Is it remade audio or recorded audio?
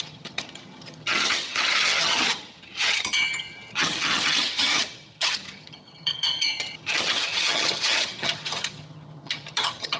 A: remade